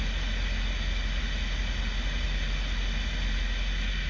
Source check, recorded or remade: recorded